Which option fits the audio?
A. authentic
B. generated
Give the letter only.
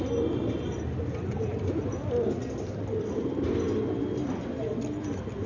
A